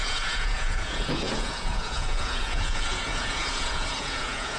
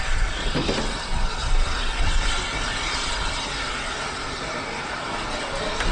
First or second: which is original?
second